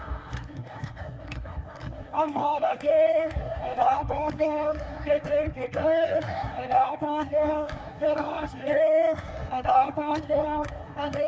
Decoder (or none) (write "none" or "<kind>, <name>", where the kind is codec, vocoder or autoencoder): codec, SNAC